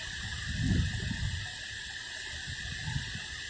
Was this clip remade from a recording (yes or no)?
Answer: no